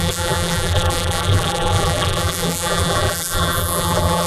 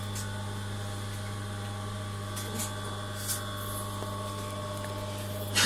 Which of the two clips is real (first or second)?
second